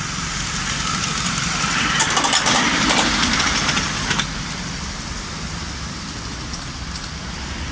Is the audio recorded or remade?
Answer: recorded